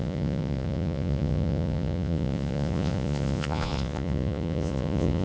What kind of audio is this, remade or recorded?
remade